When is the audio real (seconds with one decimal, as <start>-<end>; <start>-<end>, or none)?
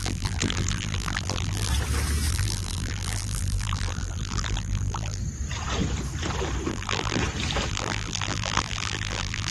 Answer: 1.7-2.3; 5.2-6.7; 7.2-7.7